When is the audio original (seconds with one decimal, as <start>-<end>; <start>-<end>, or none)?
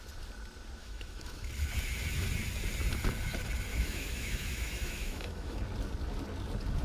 0.0-0.8; 1.5-3.7; 5.6-6.8